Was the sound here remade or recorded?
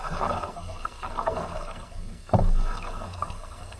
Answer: remade